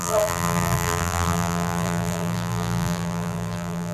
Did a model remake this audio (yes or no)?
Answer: yes